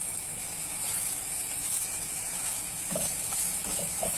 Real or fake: fake